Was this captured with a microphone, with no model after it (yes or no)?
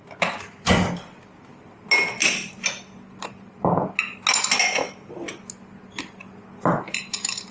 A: yes